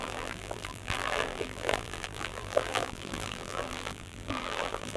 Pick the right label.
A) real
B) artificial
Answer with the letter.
B